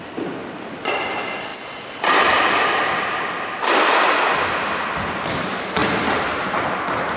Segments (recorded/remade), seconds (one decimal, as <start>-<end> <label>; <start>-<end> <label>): 0.0-7.2 recorded